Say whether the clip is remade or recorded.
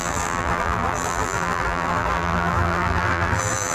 remade